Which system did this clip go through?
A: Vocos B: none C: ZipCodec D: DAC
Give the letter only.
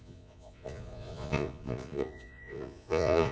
A